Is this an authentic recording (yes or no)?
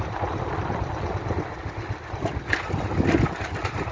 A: yes